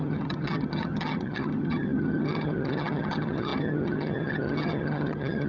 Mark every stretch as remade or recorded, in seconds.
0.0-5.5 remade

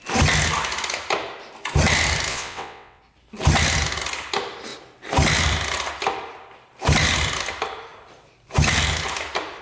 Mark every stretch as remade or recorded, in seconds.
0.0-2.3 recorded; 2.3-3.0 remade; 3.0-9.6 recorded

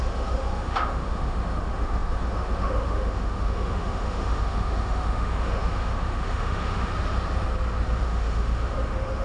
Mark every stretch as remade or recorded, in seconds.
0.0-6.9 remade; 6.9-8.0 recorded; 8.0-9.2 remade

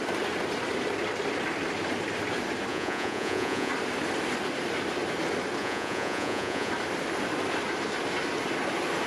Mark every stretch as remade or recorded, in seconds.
0.0-2.7 recorded; 2.7-3.7 remade; 3.7-5.6 recorded; 5.6-6.7 remade; 6.7-9.1 recorded

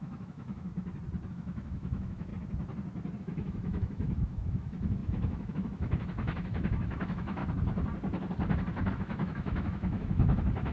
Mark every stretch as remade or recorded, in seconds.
0.0-0.7 remade; 0.7-1.3 recorded; 1.3-2.3 remade; 2.3-3.2 recorded; 3.2-7.4 remade; 7.4-8.9 recorded; 8.9-10.7 remade

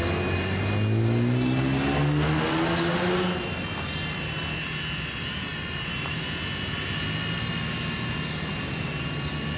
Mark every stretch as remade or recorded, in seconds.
0.0-9.6 recorded

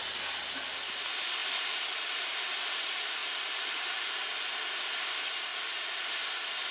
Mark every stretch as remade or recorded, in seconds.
0.0-1.4 recorded; 1.4-2.8 remade; 2.8-3.2 recorded; 3.2-4.1 remade; 4.1-5.5 recorded; 5.5-6.3 remade; 6.3-6.7 recorded